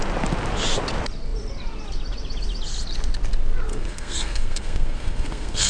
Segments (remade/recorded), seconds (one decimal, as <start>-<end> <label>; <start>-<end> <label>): 0.0-3.7 recorded; 3.7-5.7 remade